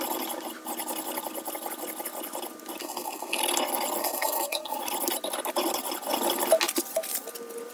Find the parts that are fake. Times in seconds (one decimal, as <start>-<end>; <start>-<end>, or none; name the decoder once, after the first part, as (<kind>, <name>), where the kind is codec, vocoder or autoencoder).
2.8-3.4 (codec, SNAC); 4.0-4.8